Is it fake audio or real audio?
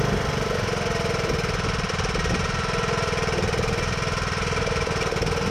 real